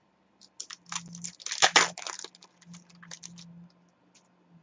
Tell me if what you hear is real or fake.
real